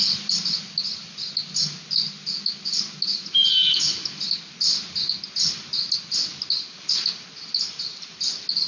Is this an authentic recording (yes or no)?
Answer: yes